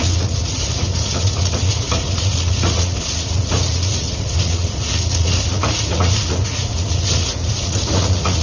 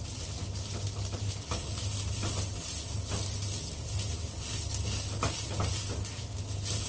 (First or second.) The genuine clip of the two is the second